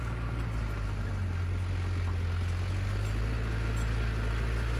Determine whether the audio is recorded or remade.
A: recorded